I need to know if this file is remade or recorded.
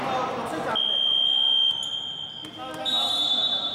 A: recorded